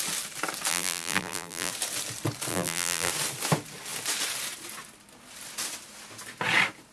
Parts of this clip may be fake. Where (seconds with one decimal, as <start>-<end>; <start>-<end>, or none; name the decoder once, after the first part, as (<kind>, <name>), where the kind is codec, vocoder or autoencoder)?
0.7-1.7 (vocoder, BigVGAN v2); 2.5-3.1